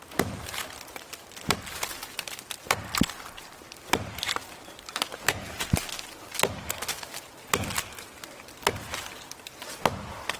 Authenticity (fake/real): real